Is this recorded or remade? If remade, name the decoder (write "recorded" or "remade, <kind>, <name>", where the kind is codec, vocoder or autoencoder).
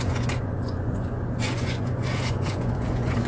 remade, vocoder, Vocos